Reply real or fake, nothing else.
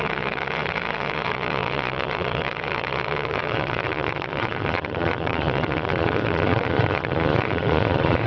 fake